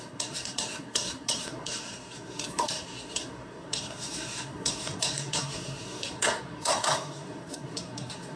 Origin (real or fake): fake